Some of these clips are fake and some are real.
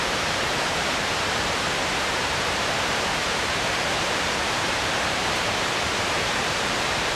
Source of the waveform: fake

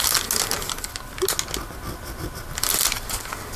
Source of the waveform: real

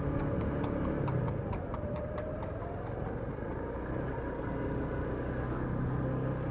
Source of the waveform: real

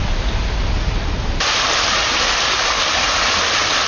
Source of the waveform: real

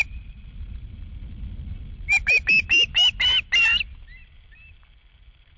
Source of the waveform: real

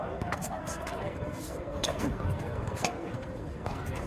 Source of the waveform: fake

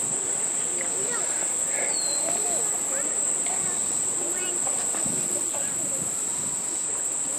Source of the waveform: real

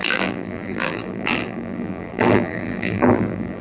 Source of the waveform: fake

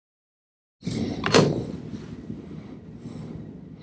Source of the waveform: real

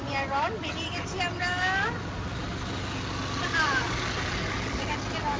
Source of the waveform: real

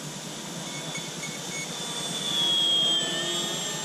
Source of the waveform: real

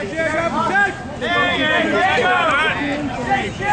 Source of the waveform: real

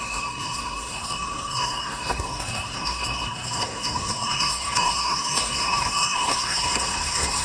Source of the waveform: fake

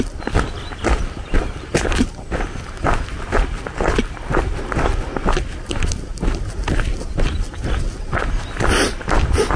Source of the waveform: real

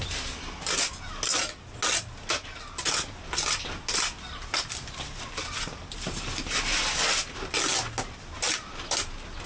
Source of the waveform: real